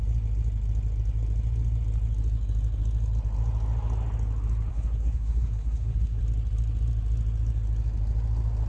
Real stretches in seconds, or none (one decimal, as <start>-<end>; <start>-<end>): 0.0-4.7; 6.2-8.7